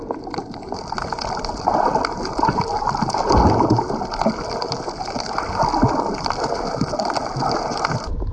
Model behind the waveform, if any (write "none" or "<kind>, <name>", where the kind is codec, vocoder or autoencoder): none